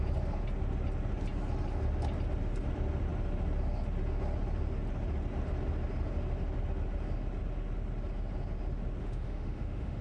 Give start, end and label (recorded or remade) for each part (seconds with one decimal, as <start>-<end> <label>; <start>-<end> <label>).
0.0-9.0 recorded; 9.0-10.0 remade